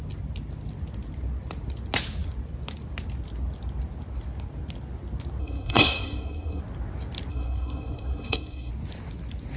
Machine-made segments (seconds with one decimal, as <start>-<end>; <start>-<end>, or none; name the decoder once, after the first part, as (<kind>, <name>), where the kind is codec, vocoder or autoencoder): 5.4-6.6 (codec, SNAC); 7.3-8.7